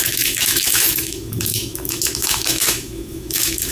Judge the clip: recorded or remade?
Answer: remade